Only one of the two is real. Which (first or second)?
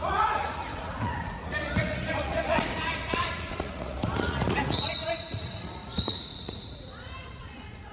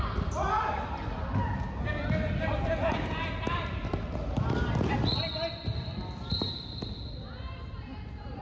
second